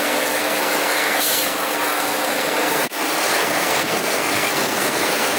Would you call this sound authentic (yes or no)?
no